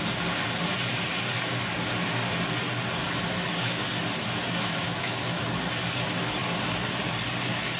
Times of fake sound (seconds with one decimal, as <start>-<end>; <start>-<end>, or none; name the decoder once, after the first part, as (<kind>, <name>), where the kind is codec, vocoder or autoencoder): 3.0-3.8 (autoencoder, DAC-VAE); 4.6-5.4

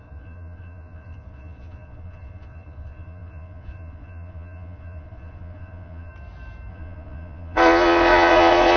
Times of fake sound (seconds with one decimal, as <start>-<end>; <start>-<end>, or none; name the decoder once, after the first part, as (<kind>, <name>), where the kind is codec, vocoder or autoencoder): 0.0-6.1 (vocoder, Vocos); 6.7-8.8

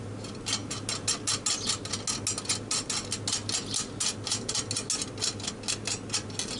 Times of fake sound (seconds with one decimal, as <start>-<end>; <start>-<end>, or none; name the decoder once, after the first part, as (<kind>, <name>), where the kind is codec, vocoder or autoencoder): none

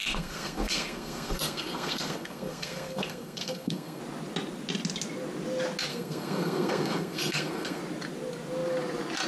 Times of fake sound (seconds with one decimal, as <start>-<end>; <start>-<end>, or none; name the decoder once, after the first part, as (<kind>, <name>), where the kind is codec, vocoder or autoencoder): 0.0-4.0 (codec, SNAC); 5.9-7.8